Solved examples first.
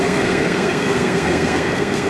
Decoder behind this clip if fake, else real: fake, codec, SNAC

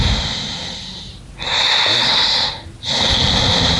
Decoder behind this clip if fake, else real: real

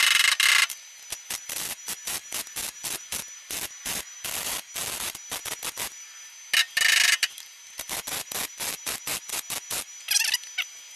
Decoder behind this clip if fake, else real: real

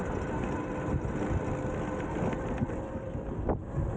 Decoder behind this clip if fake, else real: real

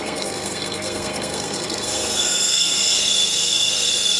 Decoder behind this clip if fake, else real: fake, codec, SNAC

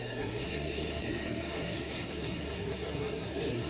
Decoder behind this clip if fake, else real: fake, codec, SNAC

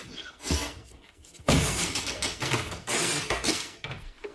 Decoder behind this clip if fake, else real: fake, codec, SNAC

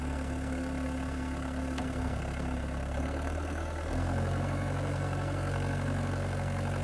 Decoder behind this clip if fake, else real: fake, codec, SNAC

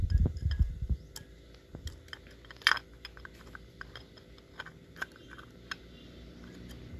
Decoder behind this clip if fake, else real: real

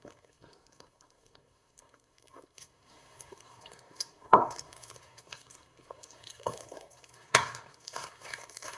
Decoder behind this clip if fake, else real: fake, codec, SNAC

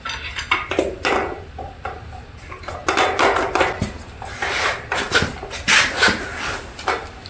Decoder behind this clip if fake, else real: real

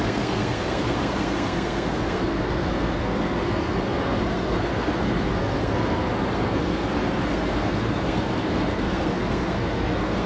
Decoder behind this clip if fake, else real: fake, codec, SNAC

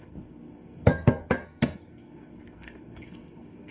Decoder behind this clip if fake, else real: fake, codec, SNAC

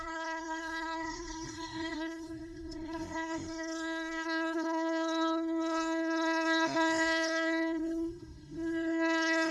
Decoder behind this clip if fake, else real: fake, codec, SNAC